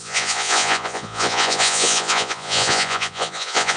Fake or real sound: fake